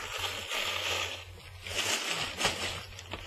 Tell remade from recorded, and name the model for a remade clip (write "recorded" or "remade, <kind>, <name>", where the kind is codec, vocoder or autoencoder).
recorded